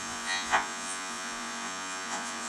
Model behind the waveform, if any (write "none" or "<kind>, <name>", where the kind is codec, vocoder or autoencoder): vocoder, Vocos